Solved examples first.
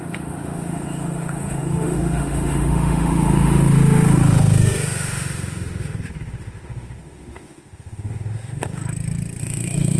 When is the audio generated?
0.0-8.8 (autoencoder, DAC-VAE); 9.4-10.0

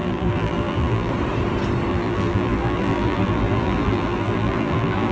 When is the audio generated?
0.0-1.1 (vocoder, BigVGAN v2); 1.9-5.1

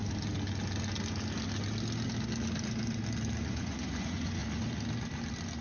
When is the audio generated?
3.4-4.4 (vocoder, Vocos)